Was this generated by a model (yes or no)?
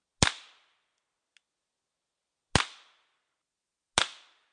no